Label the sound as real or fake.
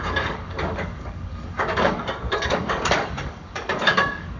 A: fake